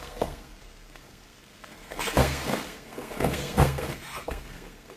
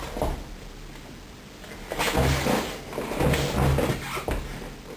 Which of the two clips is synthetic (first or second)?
first